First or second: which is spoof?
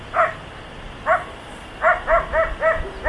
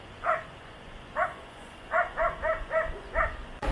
second